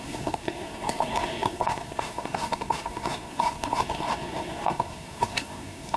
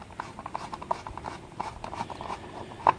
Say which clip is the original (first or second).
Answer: second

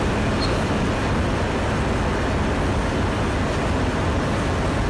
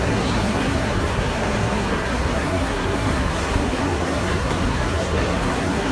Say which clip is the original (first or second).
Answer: first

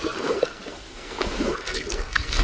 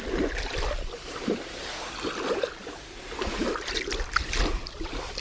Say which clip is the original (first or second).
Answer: second